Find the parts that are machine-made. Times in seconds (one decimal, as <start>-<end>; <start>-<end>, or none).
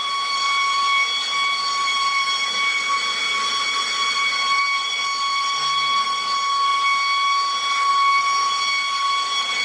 0.0-4.8